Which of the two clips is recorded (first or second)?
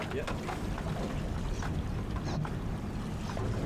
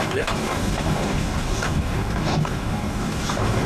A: first